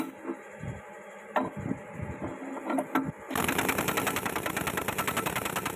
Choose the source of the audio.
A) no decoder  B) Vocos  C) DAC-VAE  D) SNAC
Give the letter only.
A